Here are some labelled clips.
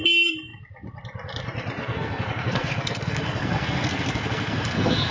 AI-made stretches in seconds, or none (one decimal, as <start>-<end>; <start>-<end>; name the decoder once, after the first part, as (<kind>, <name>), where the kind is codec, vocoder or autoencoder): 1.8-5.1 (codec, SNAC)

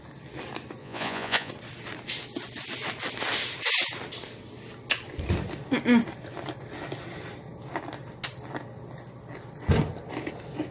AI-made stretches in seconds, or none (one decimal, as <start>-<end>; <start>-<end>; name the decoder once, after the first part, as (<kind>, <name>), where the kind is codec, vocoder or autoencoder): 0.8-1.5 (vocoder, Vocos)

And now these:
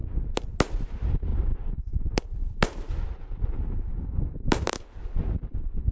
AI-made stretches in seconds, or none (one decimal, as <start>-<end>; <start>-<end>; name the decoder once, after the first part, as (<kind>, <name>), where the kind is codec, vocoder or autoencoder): 1.3-1.9 (vocoder, BigVGAN v2); 2.4-5.9

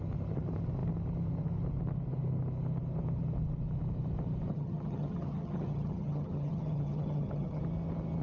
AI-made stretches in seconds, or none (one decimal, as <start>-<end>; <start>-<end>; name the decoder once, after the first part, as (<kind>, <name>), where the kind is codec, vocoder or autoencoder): 4.5-7.6 (vocoder, HiFi-GAN)